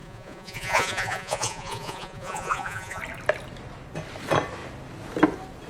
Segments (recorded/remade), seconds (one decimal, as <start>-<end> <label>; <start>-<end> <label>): 0.0-3.0 remade; 3.0-5.7 recorded